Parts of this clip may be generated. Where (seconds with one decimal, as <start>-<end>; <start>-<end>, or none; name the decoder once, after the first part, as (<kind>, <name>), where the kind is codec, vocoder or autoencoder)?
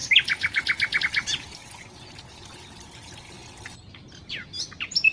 none